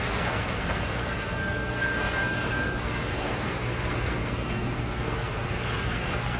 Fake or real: fake